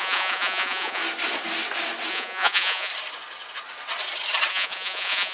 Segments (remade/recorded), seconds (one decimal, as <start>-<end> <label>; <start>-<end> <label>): 0.0-1.0 remade; 1.0-2.1 recorded; 2.1-2.9 remade; 2.9-4.5 recorded; 4.5-5.3 remade